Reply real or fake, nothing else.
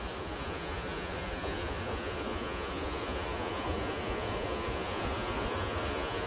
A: fake